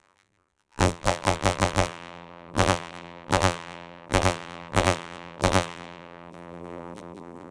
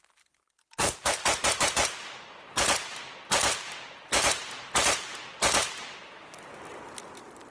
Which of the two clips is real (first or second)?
second